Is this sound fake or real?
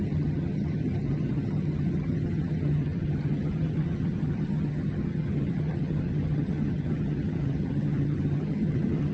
fake